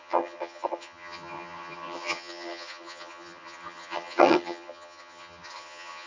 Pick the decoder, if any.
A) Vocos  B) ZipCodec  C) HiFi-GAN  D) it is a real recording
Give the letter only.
C